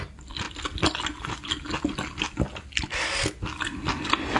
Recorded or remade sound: recorded